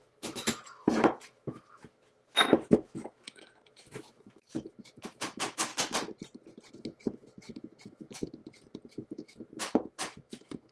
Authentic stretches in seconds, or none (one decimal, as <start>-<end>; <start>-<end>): 5.7-6.7; 8.4-8.9